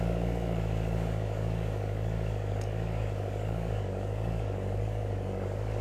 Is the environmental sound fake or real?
fake